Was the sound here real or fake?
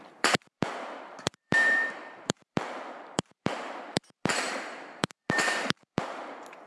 fake